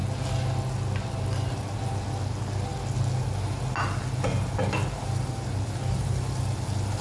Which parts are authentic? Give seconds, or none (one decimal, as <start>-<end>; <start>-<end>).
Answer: 0.0-7.0